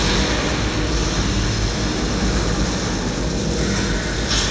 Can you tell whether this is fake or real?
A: real